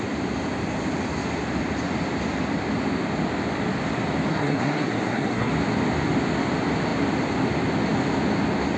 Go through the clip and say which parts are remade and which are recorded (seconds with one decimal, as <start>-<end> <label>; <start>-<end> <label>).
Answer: 0.0-4.3 recorded; 4.3-5.5 remade; 5.5-8.8 recorded